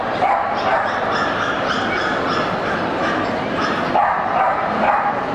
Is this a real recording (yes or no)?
yes